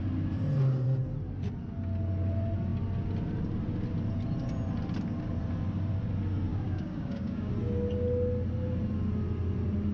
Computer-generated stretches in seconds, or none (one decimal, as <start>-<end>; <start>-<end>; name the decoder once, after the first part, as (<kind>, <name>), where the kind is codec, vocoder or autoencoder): 6.5-7.5 (codec, DAC)